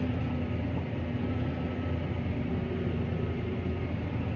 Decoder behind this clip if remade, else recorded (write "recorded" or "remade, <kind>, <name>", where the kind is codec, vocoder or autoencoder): recorded